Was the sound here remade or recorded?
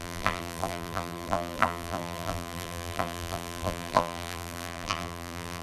remade